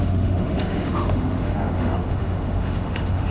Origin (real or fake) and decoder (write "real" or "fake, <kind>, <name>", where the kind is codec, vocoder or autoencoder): fake, autoencoder, DAC-VAE